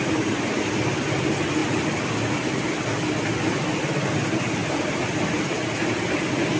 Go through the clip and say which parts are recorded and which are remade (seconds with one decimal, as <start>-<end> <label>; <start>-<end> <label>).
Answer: 0.0-6.6 recorded